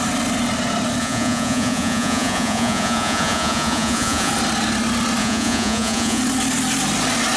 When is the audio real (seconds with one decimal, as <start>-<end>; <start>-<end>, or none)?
0.0-1.0; 4.3-5.2; 6.2-7.4